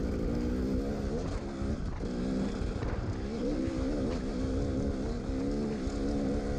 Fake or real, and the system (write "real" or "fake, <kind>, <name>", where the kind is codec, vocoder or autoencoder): real